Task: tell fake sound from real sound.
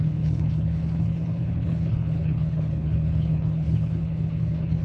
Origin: fake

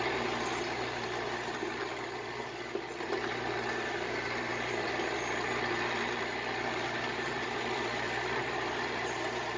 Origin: fake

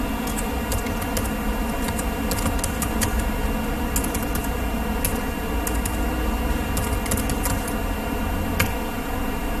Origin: real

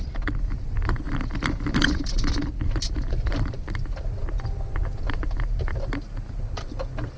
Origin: real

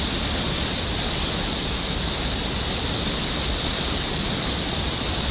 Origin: fake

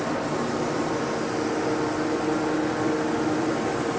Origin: real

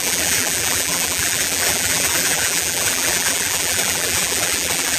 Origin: fake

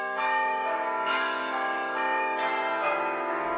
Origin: fake